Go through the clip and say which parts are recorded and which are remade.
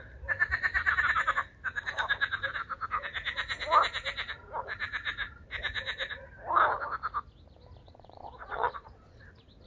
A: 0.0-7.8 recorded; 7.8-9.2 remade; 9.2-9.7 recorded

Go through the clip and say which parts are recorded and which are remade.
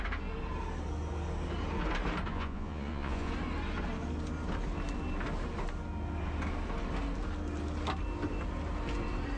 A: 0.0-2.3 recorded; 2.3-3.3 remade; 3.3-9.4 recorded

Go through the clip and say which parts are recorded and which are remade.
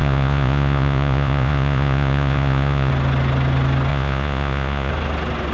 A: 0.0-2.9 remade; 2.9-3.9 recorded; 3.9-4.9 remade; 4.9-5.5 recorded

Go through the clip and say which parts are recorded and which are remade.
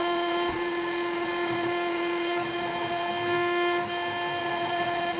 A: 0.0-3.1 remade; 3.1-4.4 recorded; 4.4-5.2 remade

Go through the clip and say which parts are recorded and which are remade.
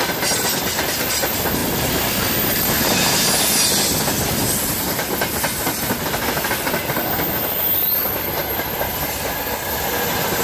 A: 0.0-10.4 recorded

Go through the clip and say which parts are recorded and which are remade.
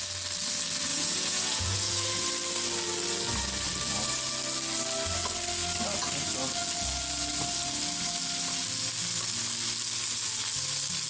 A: 0.0-0.9 recorded; 0.9-2.3 remade; 2.3-11.1 recorded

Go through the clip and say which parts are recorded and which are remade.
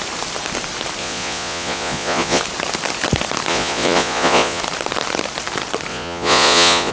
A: 0.0-1.0 recorded; 1.0-2.4 remade; 2.4-3.5 recorded; 3.5-4.6 remade; 4.6-5.9 recorded; 5.9-6.9 remade